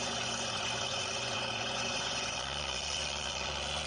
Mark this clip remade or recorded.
remade